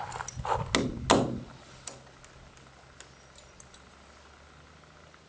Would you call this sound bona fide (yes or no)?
yes